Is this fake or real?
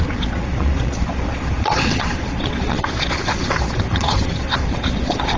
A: fake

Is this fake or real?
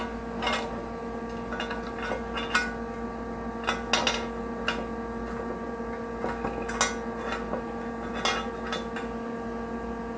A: real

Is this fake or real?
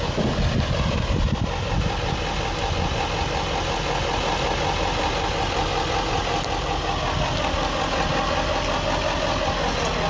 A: real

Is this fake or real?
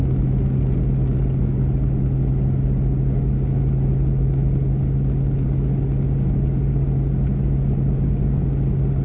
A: real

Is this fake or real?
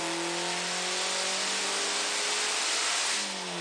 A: real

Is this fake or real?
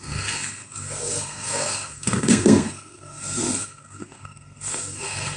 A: fake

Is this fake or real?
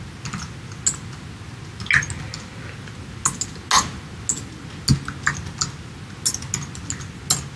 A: real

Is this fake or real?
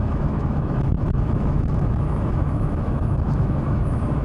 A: fake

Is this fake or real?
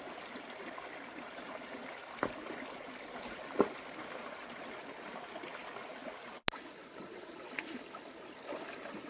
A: real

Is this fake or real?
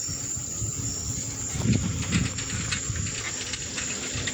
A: real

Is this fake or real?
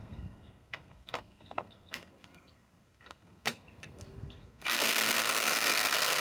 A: fake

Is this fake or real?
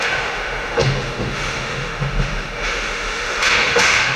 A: fake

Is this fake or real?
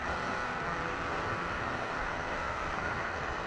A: fake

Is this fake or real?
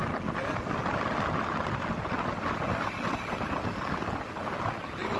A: real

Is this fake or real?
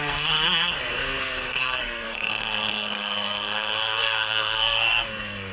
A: fake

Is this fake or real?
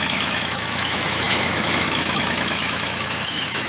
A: fake